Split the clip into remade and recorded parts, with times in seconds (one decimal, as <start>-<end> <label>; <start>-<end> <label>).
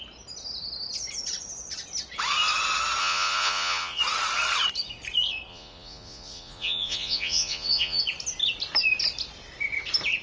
0.0-3.0 recorded; 3.0-4.0 remade; 4.0-5.5 recorded; 5.5-8.0 remade; 8.0-10.2 recorded